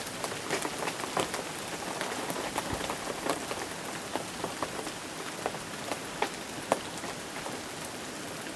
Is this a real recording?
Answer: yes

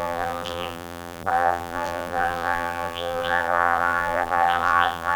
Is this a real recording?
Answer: no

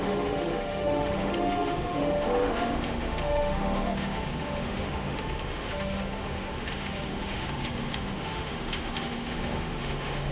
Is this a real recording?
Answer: no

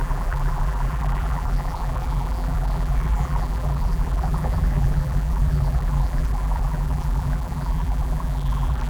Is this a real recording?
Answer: no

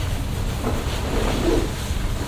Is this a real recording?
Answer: yes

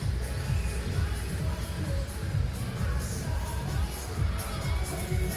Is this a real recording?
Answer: yes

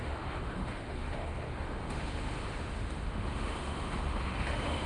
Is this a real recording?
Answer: no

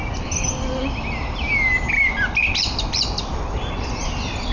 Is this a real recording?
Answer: yes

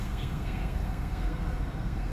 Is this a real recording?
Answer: no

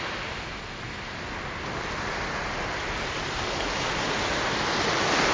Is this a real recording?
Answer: yes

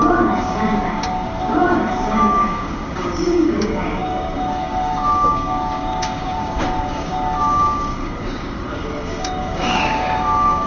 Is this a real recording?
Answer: no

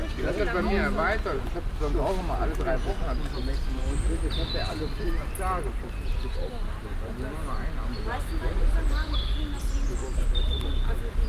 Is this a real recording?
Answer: yes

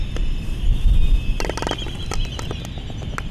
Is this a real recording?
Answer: yes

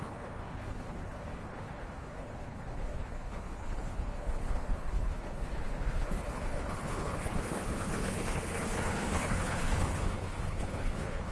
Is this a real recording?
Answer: no